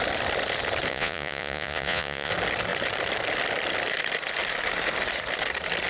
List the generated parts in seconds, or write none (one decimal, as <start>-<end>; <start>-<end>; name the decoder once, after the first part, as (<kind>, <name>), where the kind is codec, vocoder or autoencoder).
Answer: 0.9-2.3 (vocoder, Vocos)